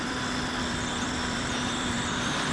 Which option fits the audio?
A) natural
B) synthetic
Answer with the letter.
B